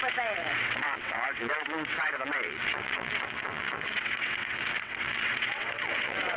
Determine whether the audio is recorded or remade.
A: remade